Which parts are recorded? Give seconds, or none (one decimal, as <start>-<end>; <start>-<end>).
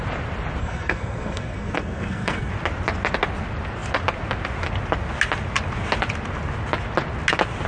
0.0-0.6; 2.5-7.7